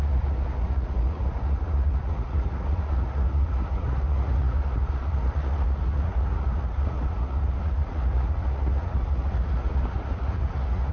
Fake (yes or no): yes